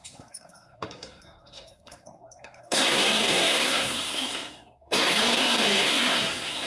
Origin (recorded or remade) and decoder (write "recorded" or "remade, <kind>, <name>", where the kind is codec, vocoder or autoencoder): remade, codec, SNAC